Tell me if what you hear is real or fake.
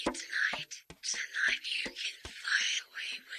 real